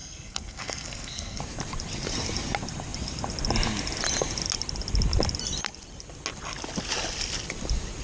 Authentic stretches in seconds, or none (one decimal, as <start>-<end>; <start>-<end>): 1.4-8.0